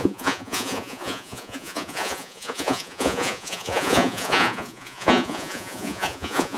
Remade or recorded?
remade